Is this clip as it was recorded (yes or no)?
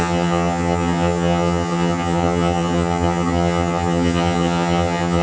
no